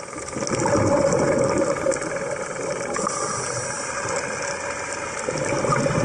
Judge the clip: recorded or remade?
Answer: recorded